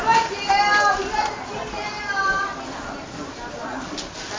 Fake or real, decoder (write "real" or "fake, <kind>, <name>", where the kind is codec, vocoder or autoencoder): real